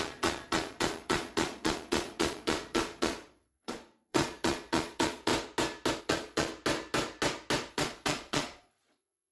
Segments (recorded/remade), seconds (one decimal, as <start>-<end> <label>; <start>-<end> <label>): 0.0-5.3 remade; 5.3-6.0 recorded; 6.0-6.5 remade; 6.5-7.7 recorded; 7.7-9.3 remade